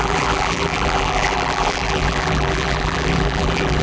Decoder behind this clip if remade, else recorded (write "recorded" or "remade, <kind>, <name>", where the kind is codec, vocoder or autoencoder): remade, vocoder, BigVGAN v2